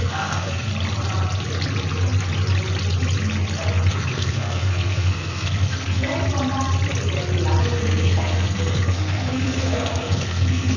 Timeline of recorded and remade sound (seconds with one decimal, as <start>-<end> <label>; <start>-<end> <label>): 0.0-0.7 remade; 0.7-3.9 recorded; 3.9-6.1 remade; 6.1-7.6 recorded; 7.6-10.8 remade